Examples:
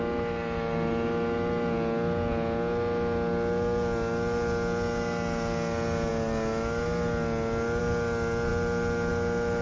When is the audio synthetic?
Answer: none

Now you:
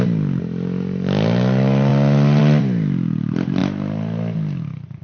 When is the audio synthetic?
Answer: none

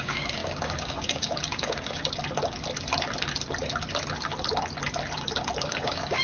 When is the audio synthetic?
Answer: 0.0-2.0 (codec, DAC); 5.7-6.2

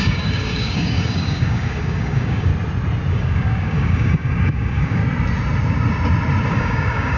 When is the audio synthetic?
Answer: 0.0-2.5 (codec, DAC); 3.1-5.0; 6.5-7.2

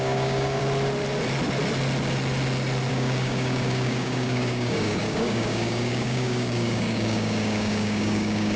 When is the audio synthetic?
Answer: 0.0-0.6 (codec, DAC); 2.9-8.6

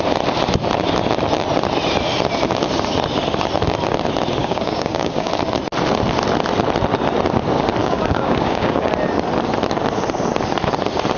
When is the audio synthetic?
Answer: 4.4-5.3 (codec, DAC); 7.8-8.9